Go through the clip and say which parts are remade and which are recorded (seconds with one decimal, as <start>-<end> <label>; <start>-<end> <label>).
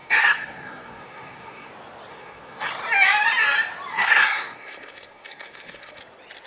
0.0-1.7 remade; 1.7-2.1 recorded; 2.1-2.7 remade; 2.7-3.9 recorded; 3.9-6.0 remade; 6.0-6.5 recorded